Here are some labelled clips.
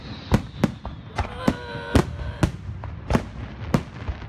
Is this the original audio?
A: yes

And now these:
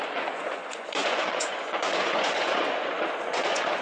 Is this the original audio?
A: no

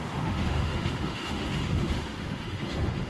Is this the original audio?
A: no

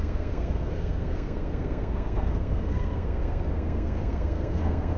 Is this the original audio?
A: no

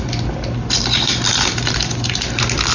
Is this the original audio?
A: yes